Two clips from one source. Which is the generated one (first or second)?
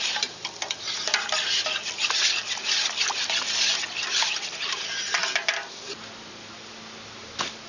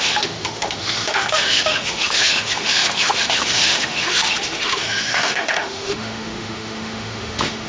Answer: second